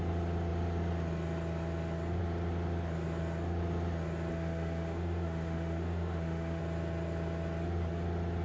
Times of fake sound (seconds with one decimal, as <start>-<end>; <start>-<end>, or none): 4.3-6.6